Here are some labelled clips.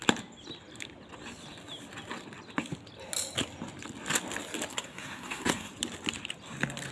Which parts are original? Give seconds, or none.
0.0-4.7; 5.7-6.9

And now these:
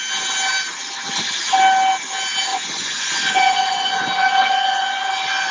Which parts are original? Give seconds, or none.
0.0-2.5; 5.0-5.5

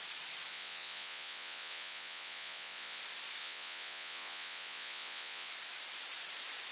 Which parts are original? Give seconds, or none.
0.0-0.5; 3.0-3.4; 5.5-6.7

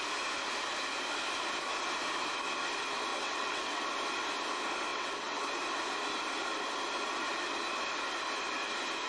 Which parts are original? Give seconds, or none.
0.0-3.1; 3.8-4.9; 5.5-9.1